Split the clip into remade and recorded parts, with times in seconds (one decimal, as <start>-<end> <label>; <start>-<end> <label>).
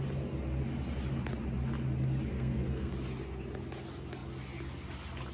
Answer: 0.0-2.3 recorded; 2.3-2.9 remade; 2.9-5.3 recorded